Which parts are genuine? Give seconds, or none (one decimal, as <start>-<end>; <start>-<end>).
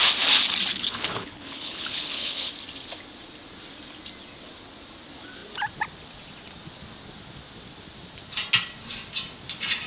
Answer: 0.0-0.7; 2.5-9.9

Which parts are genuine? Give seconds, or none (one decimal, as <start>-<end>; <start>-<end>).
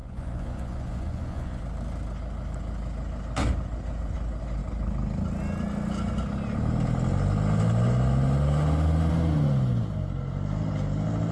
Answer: 1.6-11.3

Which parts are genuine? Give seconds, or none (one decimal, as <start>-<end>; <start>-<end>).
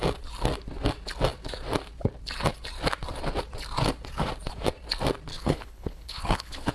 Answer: 0.0-5.3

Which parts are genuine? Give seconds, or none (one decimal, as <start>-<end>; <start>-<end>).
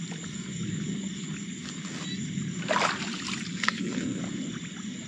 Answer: 0.0-3.5; 4.2-5.1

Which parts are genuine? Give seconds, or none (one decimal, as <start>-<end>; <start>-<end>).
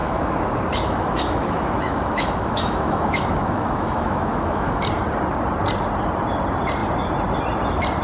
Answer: 4.8-8.0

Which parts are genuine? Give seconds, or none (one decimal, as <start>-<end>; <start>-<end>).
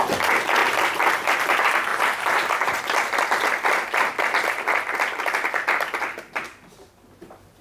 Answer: 0.0-1.9; 2.8-7.6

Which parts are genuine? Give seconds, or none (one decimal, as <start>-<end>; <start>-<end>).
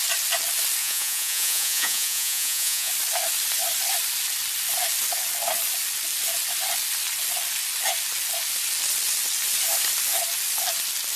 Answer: 0.0-0.8; 2.9-11.2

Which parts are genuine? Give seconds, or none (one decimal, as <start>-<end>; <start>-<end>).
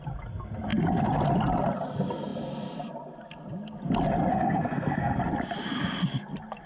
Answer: 0.0-4.3; 5.2-6.7